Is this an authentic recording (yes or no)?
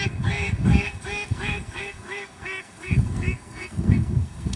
no